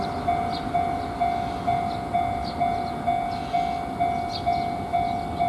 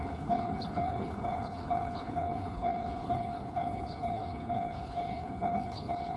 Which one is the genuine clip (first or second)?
first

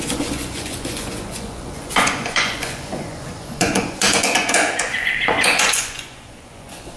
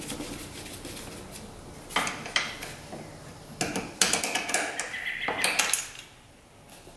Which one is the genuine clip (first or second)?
second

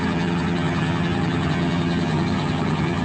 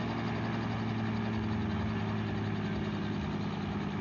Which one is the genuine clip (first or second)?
second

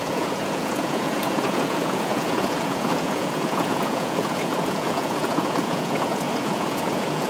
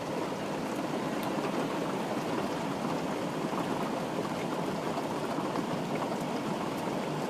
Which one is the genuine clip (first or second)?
second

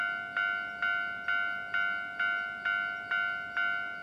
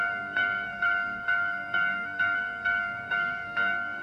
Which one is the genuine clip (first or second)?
first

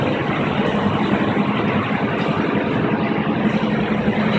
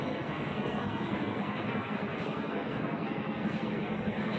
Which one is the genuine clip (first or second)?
first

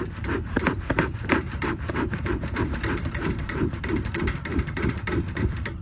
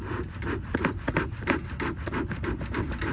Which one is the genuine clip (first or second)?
second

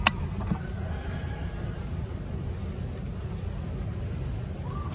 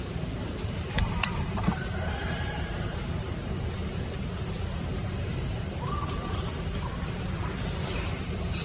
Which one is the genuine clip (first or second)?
first